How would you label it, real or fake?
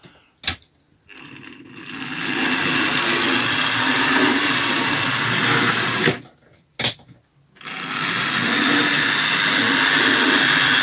real